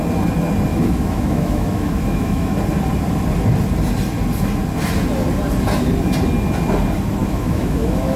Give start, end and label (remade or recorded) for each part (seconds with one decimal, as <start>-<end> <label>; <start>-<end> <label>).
0.0-0.7 recorded; 0.7-2.5 remade; 2.5-7.2 recorded; 7.2-8.2 remade